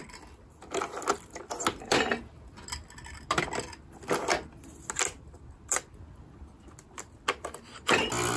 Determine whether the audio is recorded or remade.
recorded